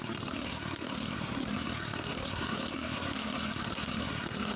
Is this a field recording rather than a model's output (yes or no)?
no